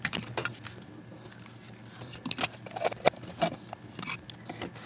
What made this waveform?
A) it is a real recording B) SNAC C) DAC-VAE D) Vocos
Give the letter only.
A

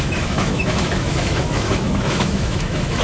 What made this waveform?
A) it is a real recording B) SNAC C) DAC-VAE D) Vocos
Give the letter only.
C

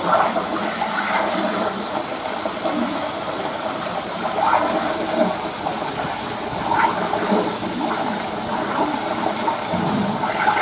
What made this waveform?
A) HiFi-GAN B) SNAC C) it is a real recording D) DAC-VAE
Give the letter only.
C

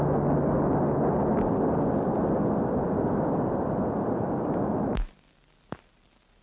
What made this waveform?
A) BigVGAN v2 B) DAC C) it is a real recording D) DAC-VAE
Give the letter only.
C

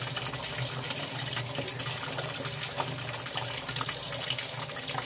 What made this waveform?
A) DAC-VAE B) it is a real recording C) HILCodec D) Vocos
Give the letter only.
B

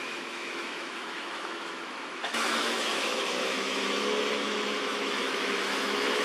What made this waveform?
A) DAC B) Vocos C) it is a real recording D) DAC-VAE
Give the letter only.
D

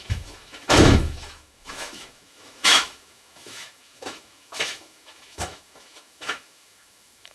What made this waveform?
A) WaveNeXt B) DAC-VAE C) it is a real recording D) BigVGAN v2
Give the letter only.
B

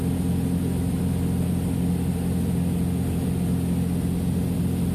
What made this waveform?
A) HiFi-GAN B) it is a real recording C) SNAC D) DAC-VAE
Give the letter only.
B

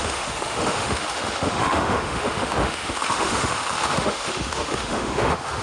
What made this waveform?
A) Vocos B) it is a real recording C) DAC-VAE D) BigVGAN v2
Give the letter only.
C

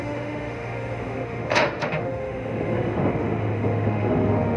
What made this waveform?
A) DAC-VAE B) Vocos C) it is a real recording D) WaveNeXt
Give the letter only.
A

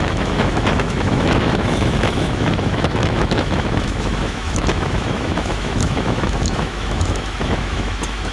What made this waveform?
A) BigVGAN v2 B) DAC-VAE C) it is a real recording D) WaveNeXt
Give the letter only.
B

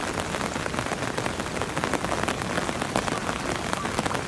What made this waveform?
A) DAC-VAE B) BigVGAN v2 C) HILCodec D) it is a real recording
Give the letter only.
D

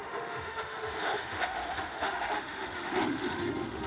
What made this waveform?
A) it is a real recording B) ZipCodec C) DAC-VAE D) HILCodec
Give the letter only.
C